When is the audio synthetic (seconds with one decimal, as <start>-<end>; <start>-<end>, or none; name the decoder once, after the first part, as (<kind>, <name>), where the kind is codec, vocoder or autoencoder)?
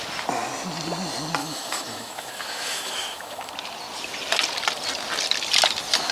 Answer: 1.4-3.5 (autoencoder, DAC-VAE)